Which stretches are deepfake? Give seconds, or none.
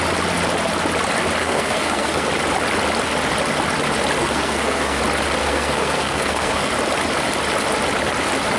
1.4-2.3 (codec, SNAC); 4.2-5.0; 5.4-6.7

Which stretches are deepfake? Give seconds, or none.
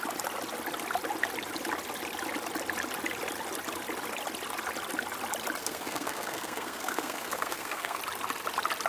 5.6-8.0 (codec, SNAC)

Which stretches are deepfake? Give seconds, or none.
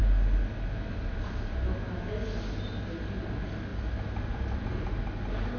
none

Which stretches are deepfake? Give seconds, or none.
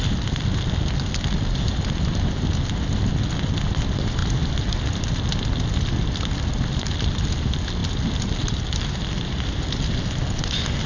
none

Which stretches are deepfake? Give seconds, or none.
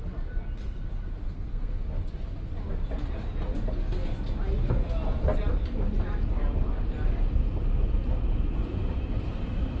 1.2-1.8 (codec, SNAC)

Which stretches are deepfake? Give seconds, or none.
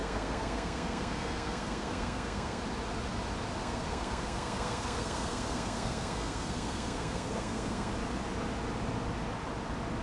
0.0-2.6 (codec, SNAC); 3.6-7.9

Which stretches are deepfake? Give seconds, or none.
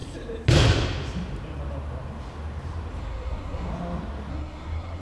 3.0-3.7 (codec, SNAC); 4.3-5.0